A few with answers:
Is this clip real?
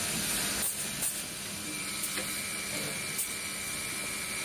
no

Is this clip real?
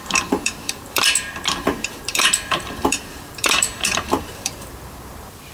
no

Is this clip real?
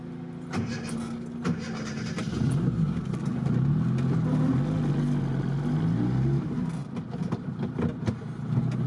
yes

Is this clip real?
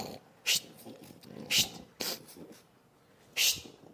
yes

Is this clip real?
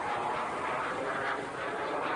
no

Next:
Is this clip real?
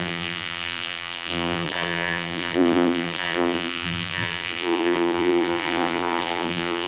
no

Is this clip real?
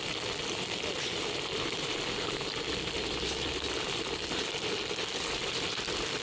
yes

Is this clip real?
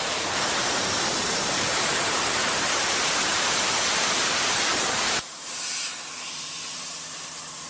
no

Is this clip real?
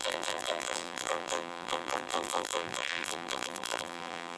no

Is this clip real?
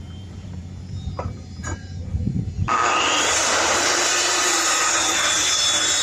no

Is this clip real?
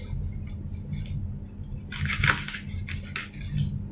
yes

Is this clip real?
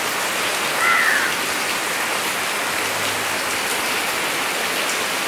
yes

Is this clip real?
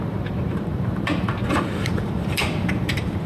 no